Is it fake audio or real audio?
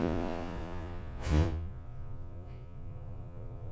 fake